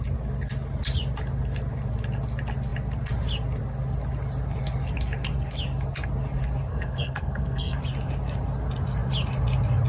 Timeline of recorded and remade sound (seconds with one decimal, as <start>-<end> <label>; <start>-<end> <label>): 0.0-6.7 recorded; 6.7-7.8 remade; 7.8-9.9 recorded